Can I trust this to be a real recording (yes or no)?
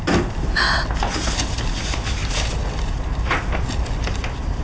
yes